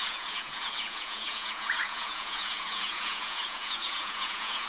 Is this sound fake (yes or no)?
yes